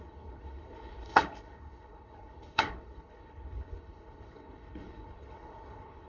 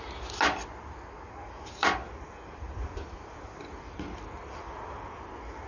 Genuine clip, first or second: second